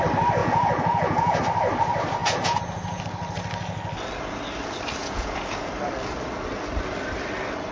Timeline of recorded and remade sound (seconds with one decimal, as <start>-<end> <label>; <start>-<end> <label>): 0.0-0.4 recorded; 0.4-1.4 remade; 1.4-2.2 recorded; 2.2-3.0 remade; 3.0-5.0 recorded; 5.0-5.7 remade; 5.7-7.7 recorded